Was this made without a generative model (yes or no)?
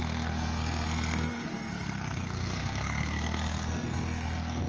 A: no